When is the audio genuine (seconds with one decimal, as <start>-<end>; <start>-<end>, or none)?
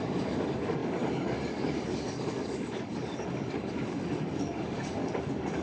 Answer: none